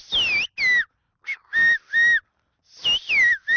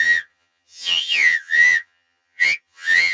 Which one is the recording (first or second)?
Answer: first